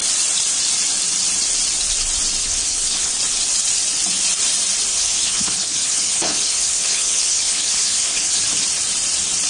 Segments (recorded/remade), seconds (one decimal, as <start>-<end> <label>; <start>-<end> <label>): 0.0-2.4 recorded; 2.4-3.1 remade; 3.1-4.9 recorded; 4.9-8.4 remade; 8.4-9.5 recorded